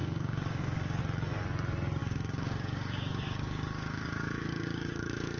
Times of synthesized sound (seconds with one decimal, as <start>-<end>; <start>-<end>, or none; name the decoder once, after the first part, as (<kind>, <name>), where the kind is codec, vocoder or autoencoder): 0.0-1.0 (codec, DAC); 2.0-5.4